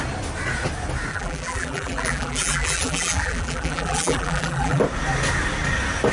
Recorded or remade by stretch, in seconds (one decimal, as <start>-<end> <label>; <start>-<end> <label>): 0.0-1.1 recorded; 1.1-4.8 remade; 4.8-6.1 recorded